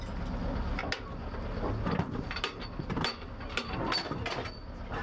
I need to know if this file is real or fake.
real